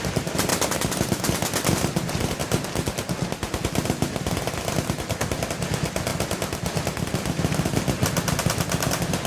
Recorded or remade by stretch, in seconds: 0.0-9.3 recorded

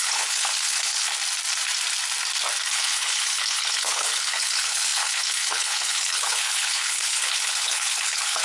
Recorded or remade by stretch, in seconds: 0.0-1.1 remade; 1.1-2.7 recorded; 2.7-8.4 remade

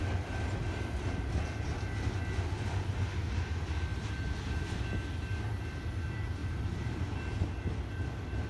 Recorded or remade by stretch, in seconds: 0.0-3.9 recorded; 3.9-4.5 remade; 4.5-6.4 recorded; 6.4-7.4 remade; 7.4-8.5 recorded

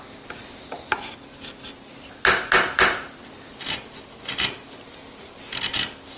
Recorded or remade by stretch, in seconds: 0.0-6.2 recorded

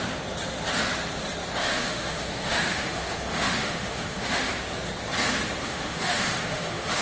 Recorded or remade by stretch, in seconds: 0.0-1.6 recorded; 1.6-4.5 remade; 4.5-5.6 recorded; 5.6-7.0 remade

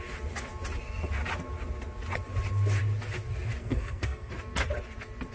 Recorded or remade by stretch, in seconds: 0.0-3.6 recorded; 3.6-4.3 remade; 4.3-5.3 recorded

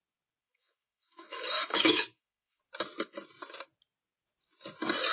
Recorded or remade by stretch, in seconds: 0.0-0.4 recorded; 0.4-2.6 remade; 2.6-5.1 recorded

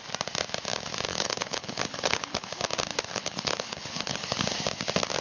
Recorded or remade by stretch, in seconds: 0.0-1.1 recorded; 1.1-2.5 remade; 2.5-3.1 recorded; 3.1-4.4 remade; 4.4-5.2 recorded